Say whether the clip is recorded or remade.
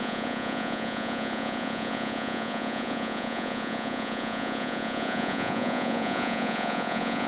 remade